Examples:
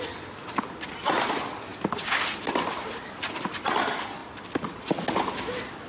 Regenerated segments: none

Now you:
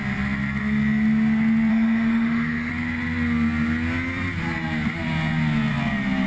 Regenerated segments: 1.7-2.7 (autoencoder, DAC-VAE)

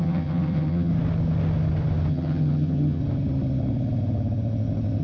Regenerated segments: 0.0-0.9 (vocoder, HiFi-GAN); 2.1-3.0

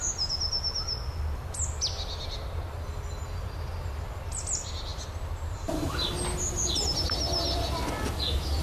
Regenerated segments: 4.9-6.1 (vocoder, BigVGAN v2)

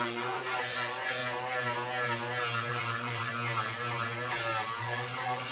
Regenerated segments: 0.0-1.2 (vocoder, Vocos); 2.7-3.3; 4.8-5.5

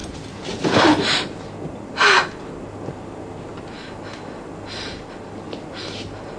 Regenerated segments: none